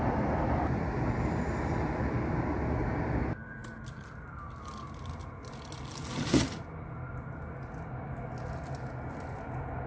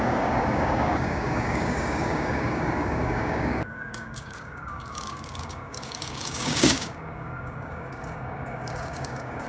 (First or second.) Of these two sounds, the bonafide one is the first